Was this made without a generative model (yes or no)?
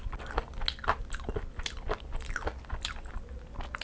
yes